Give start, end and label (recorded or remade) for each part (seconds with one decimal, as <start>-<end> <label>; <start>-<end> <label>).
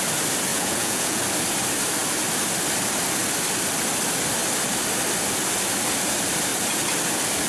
0.0-0.5 recorded; 0.5-1.2 remade; 1.2-7.5 recorded